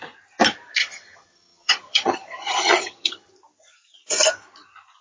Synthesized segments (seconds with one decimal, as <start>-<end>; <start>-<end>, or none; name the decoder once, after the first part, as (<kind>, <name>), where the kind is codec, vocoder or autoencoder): 0.8-3.3 (vocoder, HiFi-GAN)